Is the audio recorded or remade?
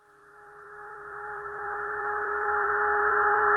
remade